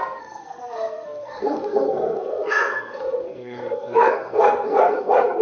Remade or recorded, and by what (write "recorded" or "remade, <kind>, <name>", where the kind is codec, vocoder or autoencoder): remade, codec, SNAC